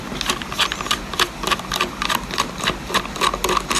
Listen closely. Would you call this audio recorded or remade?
recorded